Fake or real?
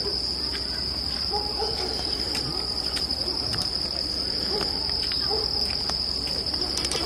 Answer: fake